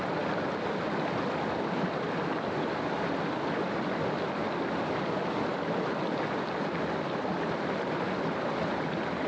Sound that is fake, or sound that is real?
real